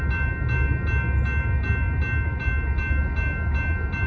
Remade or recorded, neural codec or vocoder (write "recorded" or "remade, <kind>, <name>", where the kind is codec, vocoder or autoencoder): recorded